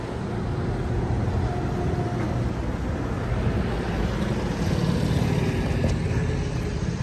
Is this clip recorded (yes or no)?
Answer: yes